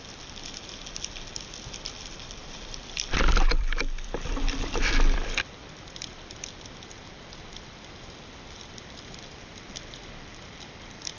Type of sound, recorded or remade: remade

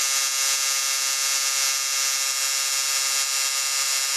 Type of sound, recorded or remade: recorded